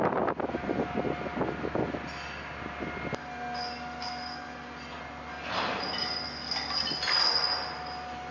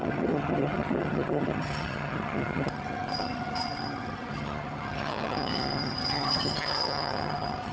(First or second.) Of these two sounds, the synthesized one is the second